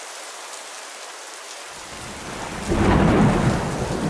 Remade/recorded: recorded